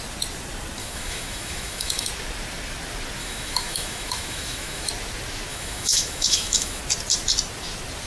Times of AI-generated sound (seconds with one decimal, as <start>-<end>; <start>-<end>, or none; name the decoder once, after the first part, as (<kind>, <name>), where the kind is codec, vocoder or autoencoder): 0.8-2.1 (autoencoder, DAC-VAE); 3.2-4.9; 5.5-6.8